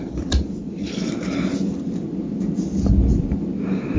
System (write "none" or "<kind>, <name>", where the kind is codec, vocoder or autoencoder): vocoder, BigVGAN v2